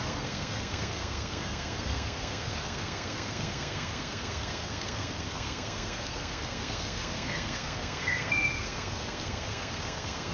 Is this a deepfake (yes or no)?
yes